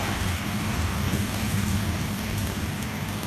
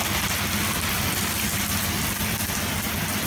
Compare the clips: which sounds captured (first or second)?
second